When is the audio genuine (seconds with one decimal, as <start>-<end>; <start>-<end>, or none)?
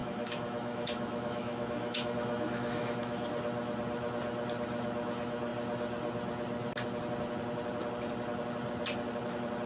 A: 3.3-9.7